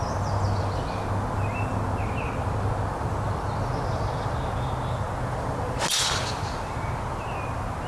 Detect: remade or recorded recorded